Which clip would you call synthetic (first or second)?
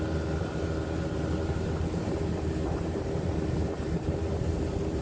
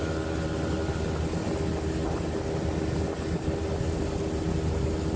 first